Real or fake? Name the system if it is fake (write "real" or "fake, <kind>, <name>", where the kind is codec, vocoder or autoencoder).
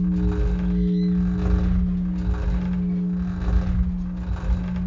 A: real